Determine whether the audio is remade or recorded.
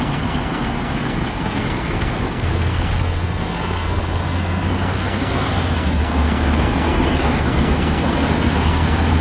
remade